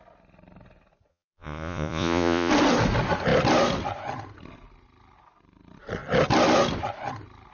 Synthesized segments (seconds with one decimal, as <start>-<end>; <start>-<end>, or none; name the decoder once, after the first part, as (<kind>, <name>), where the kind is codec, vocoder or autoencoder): 1.1-2.5 (vocoder, Vocos)